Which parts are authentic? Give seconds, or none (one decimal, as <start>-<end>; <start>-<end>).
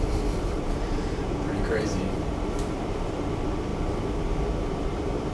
2.3-2.9; 3.7-4.7